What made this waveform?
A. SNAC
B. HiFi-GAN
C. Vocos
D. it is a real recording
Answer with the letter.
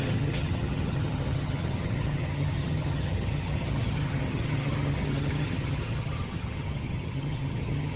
B